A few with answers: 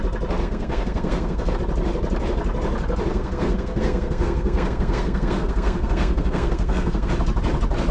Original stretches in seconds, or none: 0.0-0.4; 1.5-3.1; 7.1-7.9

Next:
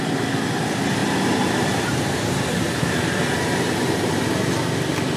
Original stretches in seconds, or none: 0.0-1.0; 4.1-5.2

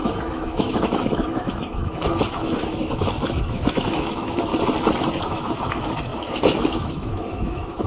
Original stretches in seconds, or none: 4.5-5.2